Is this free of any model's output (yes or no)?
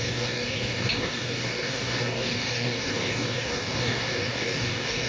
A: no